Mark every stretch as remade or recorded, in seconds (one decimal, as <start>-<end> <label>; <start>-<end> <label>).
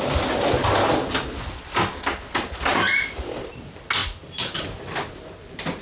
0.0-5.8 recorded